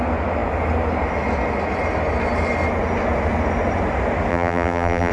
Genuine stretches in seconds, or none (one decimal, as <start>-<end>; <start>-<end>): 0.0-4.3